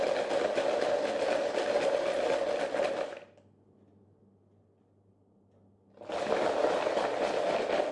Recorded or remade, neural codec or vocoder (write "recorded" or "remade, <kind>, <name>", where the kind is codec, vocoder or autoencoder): recorded